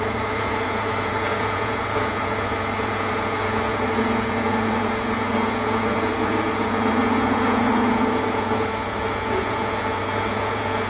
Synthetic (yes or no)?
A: yes